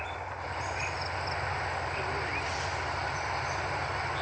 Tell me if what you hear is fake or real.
real